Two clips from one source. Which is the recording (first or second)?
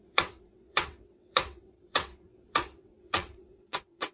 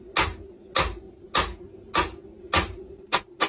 second